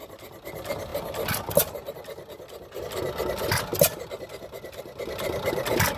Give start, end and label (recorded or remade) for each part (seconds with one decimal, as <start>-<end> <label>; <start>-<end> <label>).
0.0-6.0 recorded